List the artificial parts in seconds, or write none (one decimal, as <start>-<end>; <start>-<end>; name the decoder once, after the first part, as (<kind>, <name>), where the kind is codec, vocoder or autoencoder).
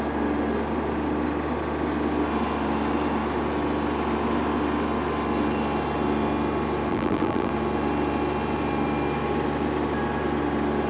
6.9-7.5 (vocoder, BigVGAN v2)